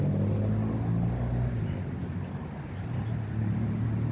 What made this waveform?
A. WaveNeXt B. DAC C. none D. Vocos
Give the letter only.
C